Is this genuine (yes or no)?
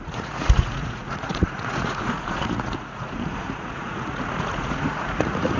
no